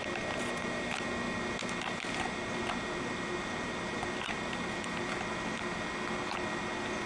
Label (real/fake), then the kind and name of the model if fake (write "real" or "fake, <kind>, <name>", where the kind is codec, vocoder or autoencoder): real